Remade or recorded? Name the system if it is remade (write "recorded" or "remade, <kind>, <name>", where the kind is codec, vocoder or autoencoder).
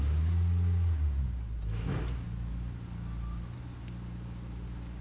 recorded